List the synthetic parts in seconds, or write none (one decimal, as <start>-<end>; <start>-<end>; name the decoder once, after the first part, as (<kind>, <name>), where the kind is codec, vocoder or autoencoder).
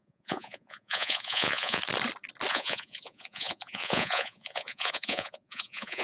0.0-1.8 (vocoder, Vocos); 2.5-6.0